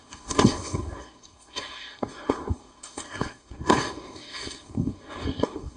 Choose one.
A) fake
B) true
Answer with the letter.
A